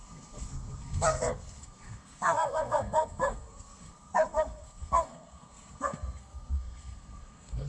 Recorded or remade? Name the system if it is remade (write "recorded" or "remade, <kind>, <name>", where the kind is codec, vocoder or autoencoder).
remade, codec, SNAC